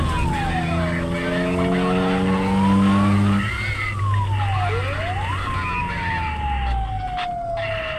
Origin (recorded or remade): recorded